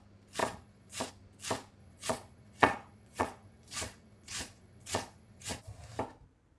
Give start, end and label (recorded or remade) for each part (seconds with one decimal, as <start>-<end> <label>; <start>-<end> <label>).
0.0-0.4 recorded; 0.4-1.1 remade; 1.1-1.8 recorded; 1.8-5.6 remade; 5.6-6.6 recorded